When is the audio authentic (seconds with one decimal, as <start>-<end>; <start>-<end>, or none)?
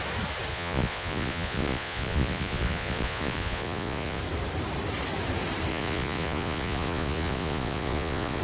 0.0-0.5; 4.2-5.7